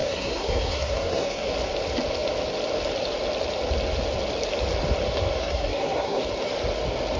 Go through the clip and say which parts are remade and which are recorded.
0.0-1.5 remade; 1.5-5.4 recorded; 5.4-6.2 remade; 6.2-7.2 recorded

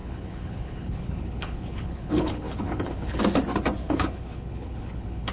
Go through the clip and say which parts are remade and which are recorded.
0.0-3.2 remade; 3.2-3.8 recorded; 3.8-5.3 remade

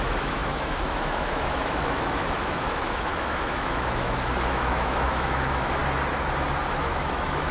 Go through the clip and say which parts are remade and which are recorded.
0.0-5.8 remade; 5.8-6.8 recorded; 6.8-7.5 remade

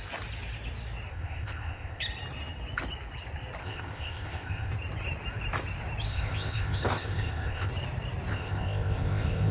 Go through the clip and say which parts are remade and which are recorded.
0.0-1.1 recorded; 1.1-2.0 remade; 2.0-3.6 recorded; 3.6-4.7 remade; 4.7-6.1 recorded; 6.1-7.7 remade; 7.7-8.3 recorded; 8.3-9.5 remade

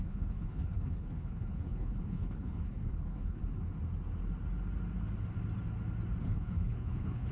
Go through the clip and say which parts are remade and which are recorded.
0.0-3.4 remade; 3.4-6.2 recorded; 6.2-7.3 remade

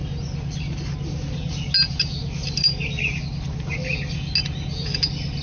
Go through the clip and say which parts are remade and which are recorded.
0.0-5.4 recorded